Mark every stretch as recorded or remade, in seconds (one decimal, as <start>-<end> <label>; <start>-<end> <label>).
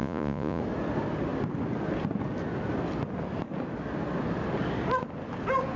0.0-0.6 remade; 0.6-5.8 recorded